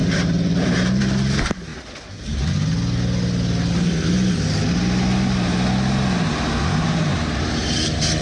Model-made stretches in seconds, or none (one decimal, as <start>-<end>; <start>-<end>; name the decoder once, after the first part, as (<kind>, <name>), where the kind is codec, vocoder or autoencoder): 0.0-1.0 (vocoder, BigVGAN v2); 7.1-8.2